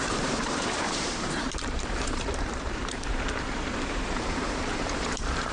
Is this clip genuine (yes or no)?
no